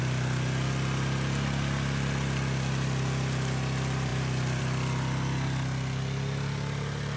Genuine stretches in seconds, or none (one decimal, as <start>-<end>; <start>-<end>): 0.0-7.2